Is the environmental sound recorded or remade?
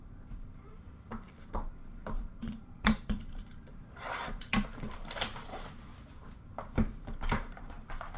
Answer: remade